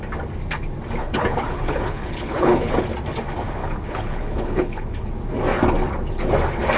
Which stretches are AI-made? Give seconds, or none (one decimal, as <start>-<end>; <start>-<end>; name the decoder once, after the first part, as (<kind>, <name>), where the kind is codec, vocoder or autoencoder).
1.0-2.7 (codec, HILCodec); 3.6-5.1